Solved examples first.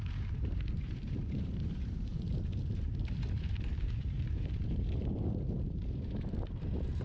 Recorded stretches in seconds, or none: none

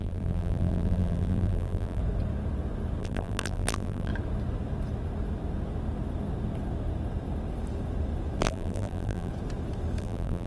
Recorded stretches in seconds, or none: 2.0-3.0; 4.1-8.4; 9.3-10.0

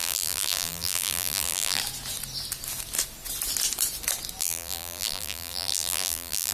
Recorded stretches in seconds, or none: 1.8-4.4

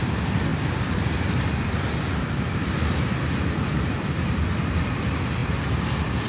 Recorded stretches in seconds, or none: 0.0-0.5; 2.8-6.3

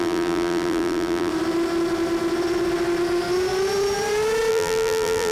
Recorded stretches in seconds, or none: 1.3-4.5